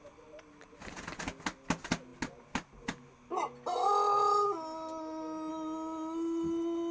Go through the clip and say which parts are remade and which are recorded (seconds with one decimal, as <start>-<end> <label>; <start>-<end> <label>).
0.0-6.9 recorded